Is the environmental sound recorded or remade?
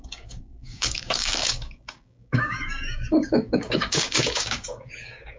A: remade